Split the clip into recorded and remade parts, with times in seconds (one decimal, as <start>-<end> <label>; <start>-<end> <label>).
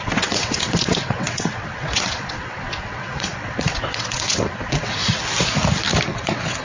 0.0-5.2 remade; 5.2-6.1 recorded; 6.1-6.6 remade